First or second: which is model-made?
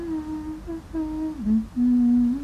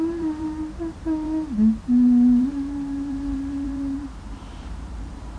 second